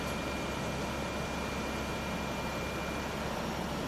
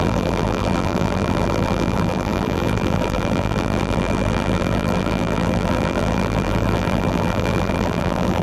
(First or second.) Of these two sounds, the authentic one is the first